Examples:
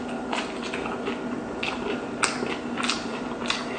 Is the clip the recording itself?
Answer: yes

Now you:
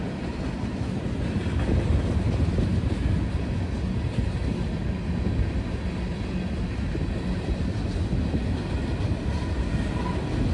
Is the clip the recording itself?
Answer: yes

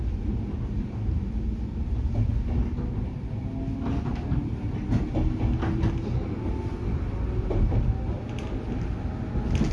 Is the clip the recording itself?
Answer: yes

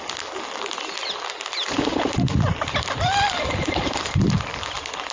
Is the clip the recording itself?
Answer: yes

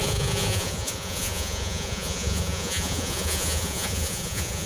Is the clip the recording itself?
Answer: no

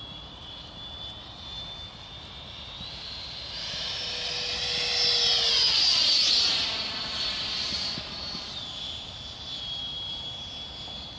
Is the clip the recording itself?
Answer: yes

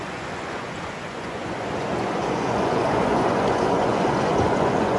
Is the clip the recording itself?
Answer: no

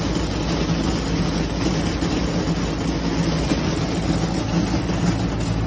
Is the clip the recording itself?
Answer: yes